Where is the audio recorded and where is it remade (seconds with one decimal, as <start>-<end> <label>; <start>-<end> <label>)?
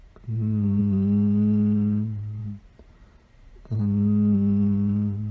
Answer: 0.0-0.8 remade; 0.8-2.4 recorded; 2.4-3.8 remade; 3.8-5.3 recorded